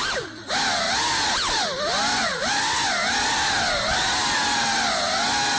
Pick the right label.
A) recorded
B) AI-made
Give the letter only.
A